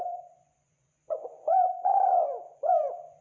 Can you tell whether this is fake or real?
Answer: fake